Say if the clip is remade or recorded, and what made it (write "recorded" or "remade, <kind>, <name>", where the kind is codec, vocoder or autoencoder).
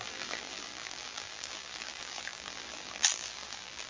remade, vocoder, BigVGAN v2